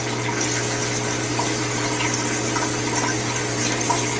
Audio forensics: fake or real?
real